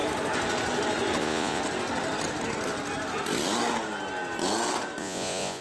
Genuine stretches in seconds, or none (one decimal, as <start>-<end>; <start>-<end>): 0.0-1.2; 1.6-5.0